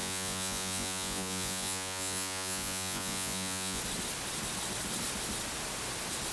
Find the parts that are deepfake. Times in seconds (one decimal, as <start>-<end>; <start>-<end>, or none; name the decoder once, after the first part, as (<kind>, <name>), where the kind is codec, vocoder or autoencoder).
0.0-3.8 (vocoder, Vocos)